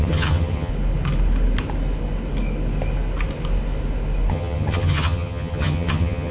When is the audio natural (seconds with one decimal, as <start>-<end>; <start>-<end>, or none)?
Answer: 0.7-4.3